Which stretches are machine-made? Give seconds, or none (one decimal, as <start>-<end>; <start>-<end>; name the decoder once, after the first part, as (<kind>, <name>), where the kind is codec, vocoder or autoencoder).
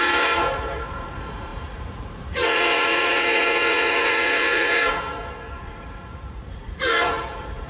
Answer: 0.0-7.7 (vocoder, Vocos)